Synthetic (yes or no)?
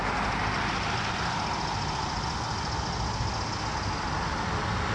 no